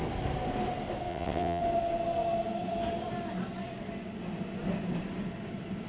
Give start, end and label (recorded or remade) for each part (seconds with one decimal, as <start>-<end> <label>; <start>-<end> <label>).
0.0-1.1 recorded; 1.1-1.6 remade; 1.6-5.9 recorded